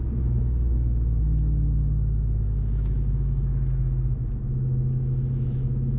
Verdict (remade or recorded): remade